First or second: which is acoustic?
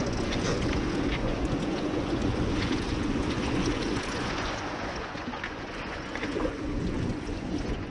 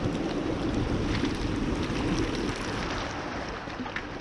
second